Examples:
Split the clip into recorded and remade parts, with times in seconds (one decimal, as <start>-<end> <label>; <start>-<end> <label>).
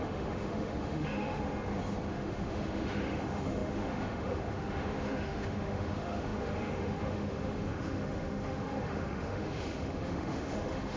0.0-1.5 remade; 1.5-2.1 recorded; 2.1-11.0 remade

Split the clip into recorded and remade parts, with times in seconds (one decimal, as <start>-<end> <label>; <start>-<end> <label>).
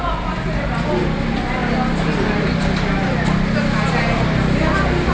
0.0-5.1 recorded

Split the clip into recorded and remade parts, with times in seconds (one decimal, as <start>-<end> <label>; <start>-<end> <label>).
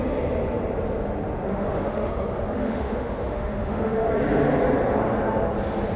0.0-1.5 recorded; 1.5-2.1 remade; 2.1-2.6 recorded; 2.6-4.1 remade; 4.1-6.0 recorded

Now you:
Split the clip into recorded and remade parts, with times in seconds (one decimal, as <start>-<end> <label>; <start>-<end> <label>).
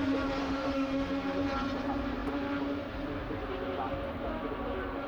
0.0-0.4 recorded; 0.4-1.1 remade; 1.1-5.1 recorded